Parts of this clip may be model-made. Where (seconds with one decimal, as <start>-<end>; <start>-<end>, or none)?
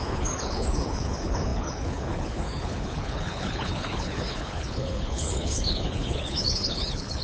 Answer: 0.0-7.2